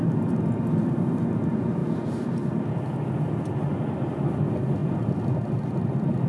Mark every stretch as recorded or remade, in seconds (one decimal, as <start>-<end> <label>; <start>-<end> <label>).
0.0-6.3 recorded